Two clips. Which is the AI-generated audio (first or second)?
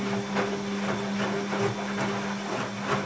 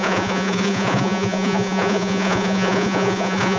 second